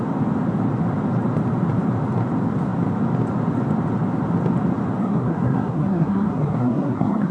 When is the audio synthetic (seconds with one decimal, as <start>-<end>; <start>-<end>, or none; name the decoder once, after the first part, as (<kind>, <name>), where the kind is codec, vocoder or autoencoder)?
5.0-7.3 (codec, SNAC)